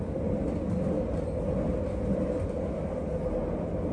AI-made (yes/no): no